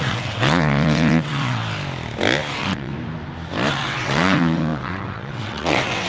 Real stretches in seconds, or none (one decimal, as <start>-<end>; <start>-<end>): 1.6-2.5; 2.9-3.7